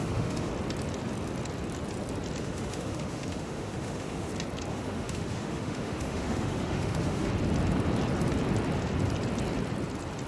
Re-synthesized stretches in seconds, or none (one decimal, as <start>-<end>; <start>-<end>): 0.0-0.5; 2.4-4.3; 4.7-7.3

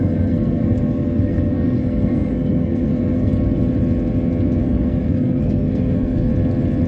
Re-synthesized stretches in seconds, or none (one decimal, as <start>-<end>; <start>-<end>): 0.0-3.3; 4.6-6.3